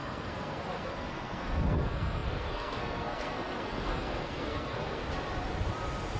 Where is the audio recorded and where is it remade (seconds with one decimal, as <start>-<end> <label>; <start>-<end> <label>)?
0.0-5.0 remade; 5.0-6.2 recorded